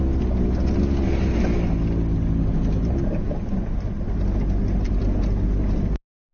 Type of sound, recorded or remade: recorded